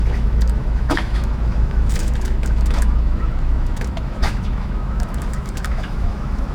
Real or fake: fake